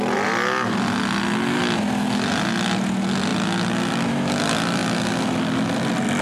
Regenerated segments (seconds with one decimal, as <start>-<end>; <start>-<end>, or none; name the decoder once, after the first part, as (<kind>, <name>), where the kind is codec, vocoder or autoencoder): none